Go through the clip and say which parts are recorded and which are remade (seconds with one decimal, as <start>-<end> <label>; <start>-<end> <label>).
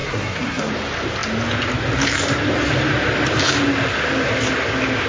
0.0-0.7 remade; 0.7-5.1 recorded